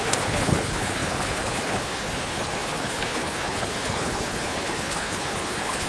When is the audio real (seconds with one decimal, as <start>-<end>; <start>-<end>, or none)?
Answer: none